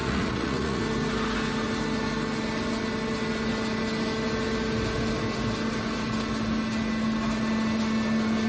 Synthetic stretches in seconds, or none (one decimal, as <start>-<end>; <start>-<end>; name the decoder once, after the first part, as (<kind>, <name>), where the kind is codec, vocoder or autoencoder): 0.0-0.8 (vocoder, Vocos)